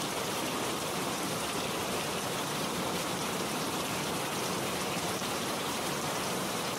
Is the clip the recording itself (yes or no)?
no